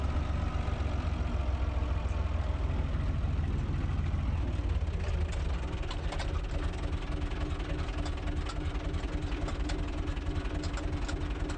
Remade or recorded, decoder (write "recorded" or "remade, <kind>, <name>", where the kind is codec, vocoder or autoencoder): recorded